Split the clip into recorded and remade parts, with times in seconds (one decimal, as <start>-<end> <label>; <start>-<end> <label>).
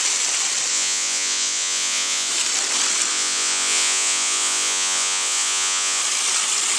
0.0-0.7 recorded; 0.7-2.3 remade; 2.3-3.1 recorded; 3.1-6.0 remade; 6.0-6.8 recorded